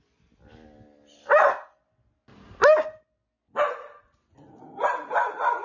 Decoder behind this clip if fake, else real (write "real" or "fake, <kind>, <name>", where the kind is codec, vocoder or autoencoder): real